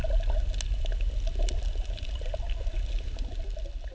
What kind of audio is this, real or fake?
real